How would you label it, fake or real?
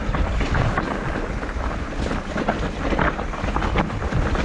real